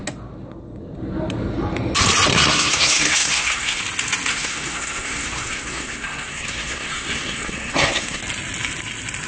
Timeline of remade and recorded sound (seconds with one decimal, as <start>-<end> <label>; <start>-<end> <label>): 0.0-2.3 recorded; 2.3-3.8 remade; 3.8-4.3 recorded; 4.3-8.2 remade; 8.2-9.3 recorded

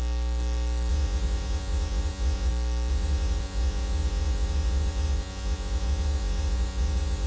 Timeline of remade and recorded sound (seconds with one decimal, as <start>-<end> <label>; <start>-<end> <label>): 0.0-0.9 recorded; 0.9-2.5 remade; 2.5-2.9 recorded; 2.9-7.3 remade

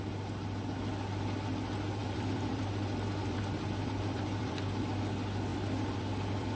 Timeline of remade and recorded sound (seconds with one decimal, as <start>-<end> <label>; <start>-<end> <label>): 0.0-2.0 recorded; 2.0-4.6 remade; 4.6-5.5 recorded; 5.5-6.5 remade

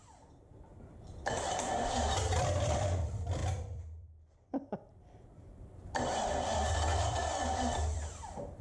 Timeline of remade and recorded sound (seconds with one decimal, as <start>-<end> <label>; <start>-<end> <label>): 0.0-8.6 remade

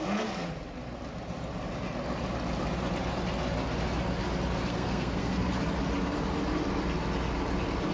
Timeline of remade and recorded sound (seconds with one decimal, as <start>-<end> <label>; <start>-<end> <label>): 0.0-4.7 recorded; 4.7-5.5 remade; 5.5-7.9 recorded

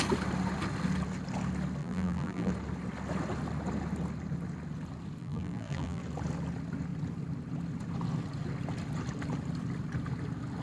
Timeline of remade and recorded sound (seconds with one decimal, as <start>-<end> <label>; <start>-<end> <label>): 0.0-1.8 recorded; 1.8-2.5 remade; 2.5-5.2 recorded; 5.2-6.0 remade; 6.0-10.6 recorded

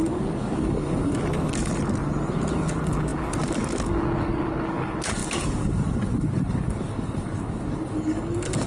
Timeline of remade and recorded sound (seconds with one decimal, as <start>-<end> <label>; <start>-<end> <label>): 0.0-1.7 remade; 1.7-2.5 recorded; 2.5-8.7 remade